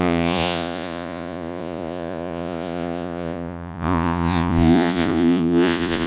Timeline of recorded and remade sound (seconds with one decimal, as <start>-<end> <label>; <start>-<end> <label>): 0.0-6.1 remade